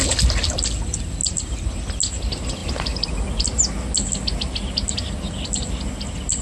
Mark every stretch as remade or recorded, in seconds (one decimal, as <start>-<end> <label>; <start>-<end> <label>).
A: 0.0-6.4 recorded